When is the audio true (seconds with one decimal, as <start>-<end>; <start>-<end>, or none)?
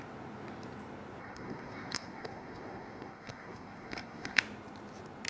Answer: 0.0-1.2; 4.4-5.3